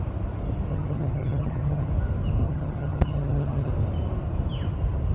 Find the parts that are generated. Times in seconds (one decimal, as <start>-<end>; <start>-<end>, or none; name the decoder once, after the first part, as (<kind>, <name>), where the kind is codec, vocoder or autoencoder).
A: 0.7-1.9 (vocoder, HiFi-GAN); 2.4-3.7